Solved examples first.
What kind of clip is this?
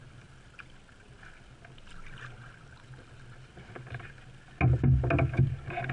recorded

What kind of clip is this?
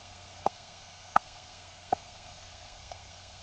remade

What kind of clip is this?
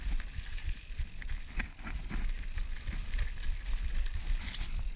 recorded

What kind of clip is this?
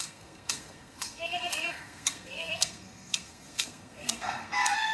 remade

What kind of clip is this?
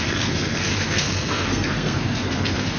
remade